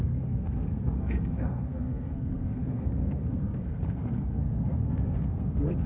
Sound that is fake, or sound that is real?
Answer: fake